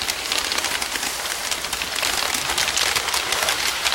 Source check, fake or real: real